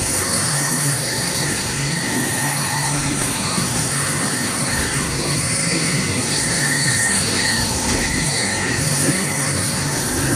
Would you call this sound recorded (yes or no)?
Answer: no